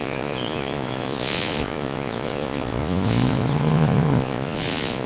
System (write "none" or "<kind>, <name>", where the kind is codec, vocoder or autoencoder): vocoder, Vocos